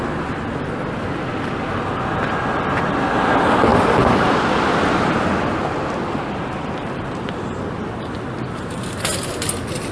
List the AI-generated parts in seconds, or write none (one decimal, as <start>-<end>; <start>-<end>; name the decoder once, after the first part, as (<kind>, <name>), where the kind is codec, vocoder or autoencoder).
none